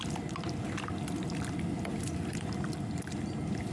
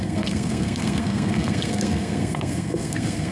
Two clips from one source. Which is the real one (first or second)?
first